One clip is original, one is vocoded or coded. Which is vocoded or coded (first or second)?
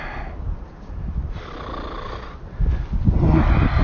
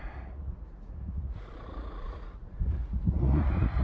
second